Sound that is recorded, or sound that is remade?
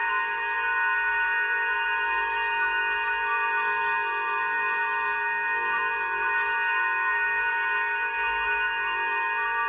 remade